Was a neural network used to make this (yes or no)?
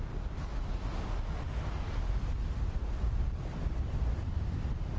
no